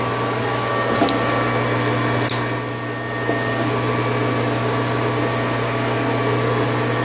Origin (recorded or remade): recorded